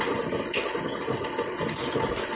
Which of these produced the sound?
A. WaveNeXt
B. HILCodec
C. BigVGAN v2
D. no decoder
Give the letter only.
D